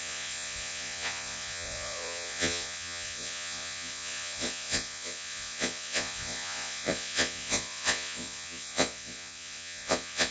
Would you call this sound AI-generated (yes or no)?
yes